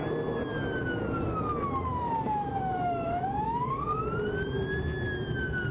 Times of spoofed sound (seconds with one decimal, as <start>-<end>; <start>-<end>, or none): 1.9-4.0